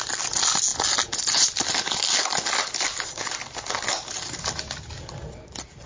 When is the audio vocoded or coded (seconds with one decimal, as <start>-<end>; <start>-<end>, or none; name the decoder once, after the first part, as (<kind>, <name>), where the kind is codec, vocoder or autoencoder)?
none